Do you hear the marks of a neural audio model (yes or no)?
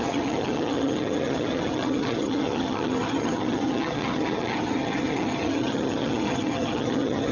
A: yes